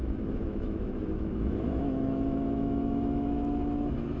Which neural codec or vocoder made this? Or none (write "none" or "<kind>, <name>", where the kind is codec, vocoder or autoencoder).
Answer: autoencoder, DAC-VAE